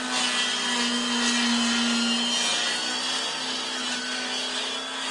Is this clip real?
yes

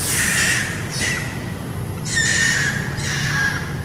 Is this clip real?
yes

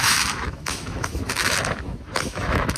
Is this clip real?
no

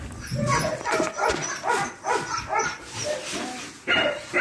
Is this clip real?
yes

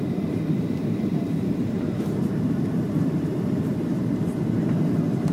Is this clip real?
no